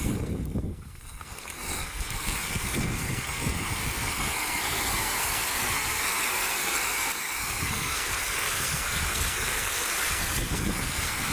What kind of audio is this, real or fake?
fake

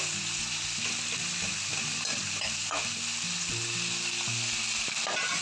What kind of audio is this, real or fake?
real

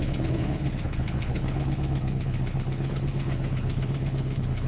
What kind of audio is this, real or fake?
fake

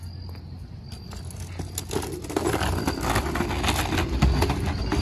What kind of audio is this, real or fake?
real